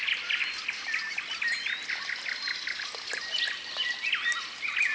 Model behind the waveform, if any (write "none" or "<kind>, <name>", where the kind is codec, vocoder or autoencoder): none